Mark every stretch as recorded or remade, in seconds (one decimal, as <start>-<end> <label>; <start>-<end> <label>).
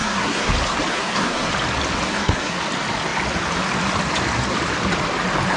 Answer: 0.0-0.5 remade; 0.5-0.9 recorded; 0.9-1.5 remade; 1.5-2.1 recorded; 2.1-2.6 remade; 2.6-5.6 recorded